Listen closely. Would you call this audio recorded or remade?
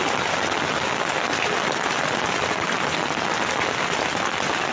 recorded